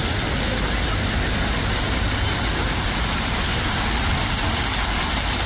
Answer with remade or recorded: recorded